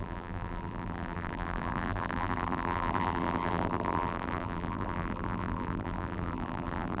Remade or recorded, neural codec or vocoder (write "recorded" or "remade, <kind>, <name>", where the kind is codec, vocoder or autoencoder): remade, vocoder, BigVGAN v2